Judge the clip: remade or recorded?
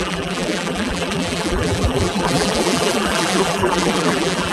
remade